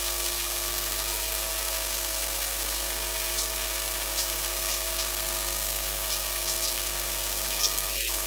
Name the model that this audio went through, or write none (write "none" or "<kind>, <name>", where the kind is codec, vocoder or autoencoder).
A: codec, SNAC